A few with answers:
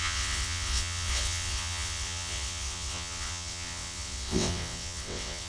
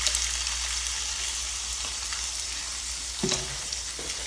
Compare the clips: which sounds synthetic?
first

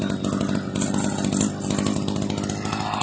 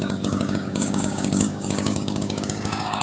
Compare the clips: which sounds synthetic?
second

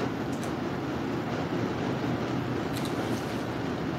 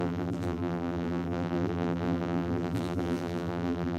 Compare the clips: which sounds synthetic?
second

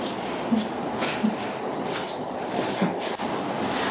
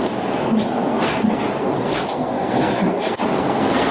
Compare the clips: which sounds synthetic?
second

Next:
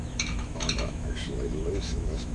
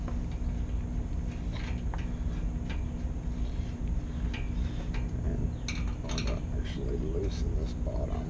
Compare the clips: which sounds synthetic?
first